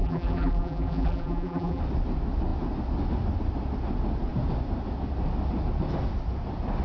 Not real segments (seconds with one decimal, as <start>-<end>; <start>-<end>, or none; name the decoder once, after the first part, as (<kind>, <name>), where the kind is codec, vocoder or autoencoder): 0.0-1.8 (vocoder, BigVGAN v2)